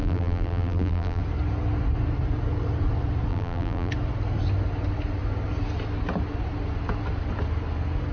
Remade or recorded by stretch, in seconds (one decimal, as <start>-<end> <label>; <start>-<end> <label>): 0.0-1.2 remade; 1.2-3.3 recorded; 3.3-3.9 remade; 3.9-8.1 recorded